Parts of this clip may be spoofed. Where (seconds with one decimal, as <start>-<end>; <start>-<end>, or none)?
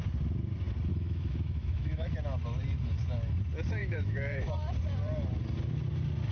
0.9-2.1; 3.8-4.5